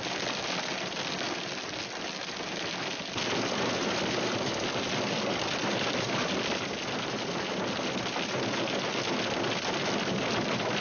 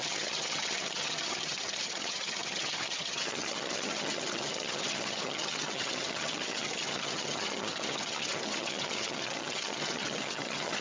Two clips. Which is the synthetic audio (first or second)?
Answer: second